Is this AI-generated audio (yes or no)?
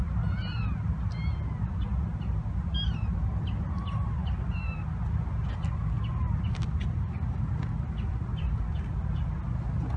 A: no